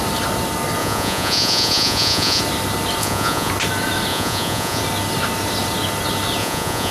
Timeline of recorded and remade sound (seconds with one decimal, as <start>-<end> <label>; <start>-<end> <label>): 0.0-0.8 recorded; 0.8-2.4 remade; 2.4-3.0 recorded; 3.0-3.5 remade; 3.5-4.1 recorded; 4.1-4.8 remade; 4.8-6.4 recorded; 6.4-6.9 remade